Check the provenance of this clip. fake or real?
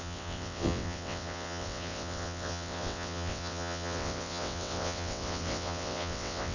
fake